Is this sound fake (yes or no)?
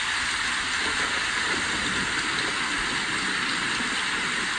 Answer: no